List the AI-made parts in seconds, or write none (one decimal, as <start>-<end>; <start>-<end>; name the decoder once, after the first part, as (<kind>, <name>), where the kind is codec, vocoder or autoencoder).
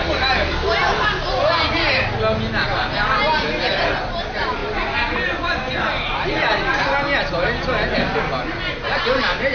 none